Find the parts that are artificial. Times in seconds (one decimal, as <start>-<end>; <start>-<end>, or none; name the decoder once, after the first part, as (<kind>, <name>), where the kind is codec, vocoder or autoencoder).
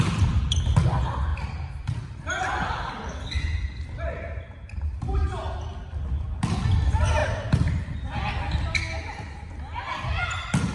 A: 1.3-4.4 (vocoder, BigVGAN v2)